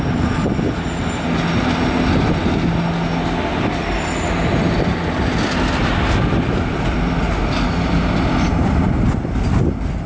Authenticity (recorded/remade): recorded